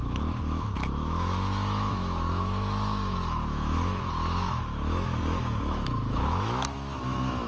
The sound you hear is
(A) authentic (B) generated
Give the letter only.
B